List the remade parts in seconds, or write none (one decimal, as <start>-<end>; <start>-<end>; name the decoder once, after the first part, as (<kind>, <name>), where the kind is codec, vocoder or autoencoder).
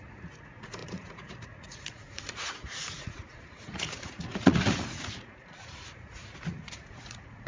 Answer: 0.0-7.5 (vocoder, Vocos)